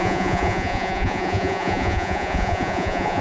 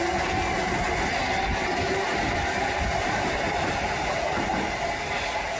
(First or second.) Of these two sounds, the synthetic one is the first